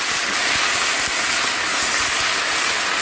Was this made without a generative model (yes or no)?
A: yes